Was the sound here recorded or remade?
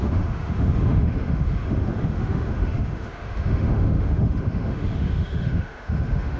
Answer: remade